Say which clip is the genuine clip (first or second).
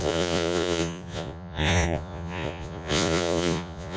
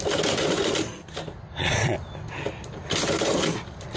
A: second